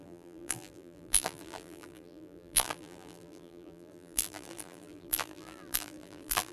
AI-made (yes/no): yes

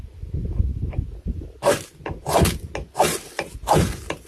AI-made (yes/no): no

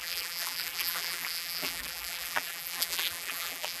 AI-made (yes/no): yes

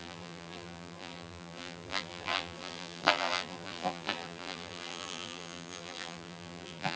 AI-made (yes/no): yes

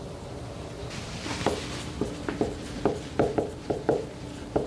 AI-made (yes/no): yes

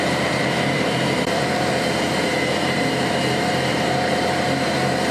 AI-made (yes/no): yes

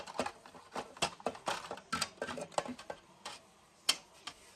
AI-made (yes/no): no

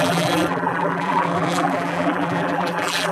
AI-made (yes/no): yes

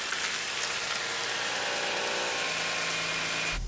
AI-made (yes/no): no